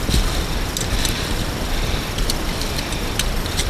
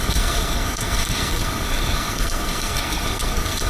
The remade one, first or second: second